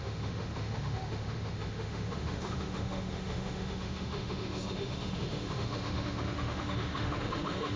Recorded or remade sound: remade